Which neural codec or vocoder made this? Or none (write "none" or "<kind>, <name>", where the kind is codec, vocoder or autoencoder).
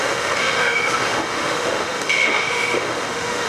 autoencoder, DAC-VAE